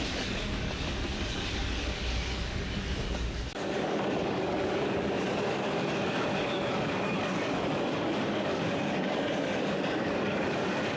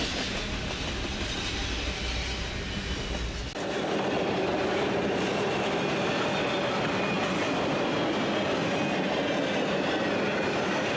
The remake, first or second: first